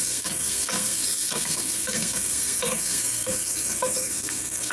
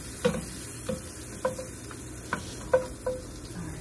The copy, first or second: first